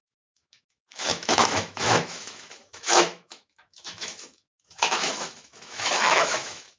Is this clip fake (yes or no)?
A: yes